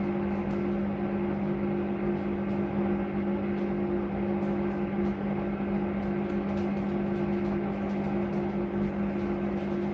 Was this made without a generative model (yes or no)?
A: yes